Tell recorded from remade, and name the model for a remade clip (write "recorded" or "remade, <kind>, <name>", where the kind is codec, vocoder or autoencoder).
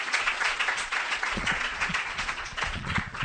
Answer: remade, vocoder, Vocos